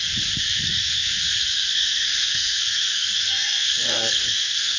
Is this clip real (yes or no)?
no